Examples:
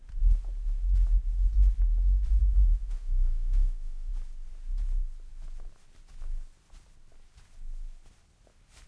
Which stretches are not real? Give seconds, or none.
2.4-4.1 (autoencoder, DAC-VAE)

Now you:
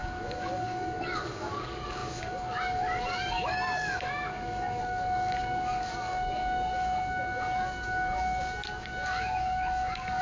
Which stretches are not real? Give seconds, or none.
0.0-10.2 (codec, DAC)

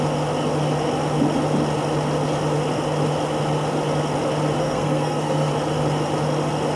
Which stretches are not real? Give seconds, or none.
4.6-5.5 (codec, SNAC)

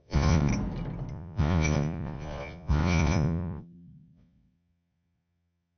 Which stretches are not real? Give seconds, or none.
0.0-0.5 (vocoder, Vocos); 1.1-5.8

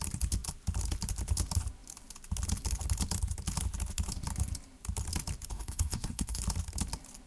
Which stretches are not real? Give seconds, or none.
5.5-6.4 (codec, SNAC)